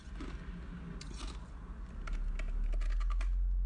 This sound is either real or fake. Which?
real